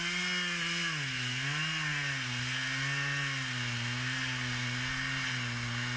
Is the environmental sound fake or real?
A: real